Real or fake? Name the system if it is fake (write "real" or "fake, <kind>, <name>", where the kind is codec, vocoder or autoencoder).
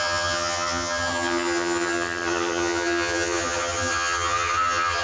fake, vocoder, HiFi-GAN